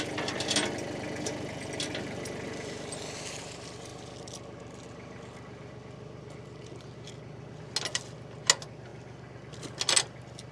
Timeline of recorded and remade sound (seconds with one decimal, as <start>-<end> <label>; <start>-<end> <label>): 0.0-10.5 recorded